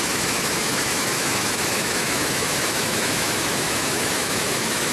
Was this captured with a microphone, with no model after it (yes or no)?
no